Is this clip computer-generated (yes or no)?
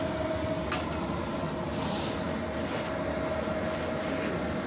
no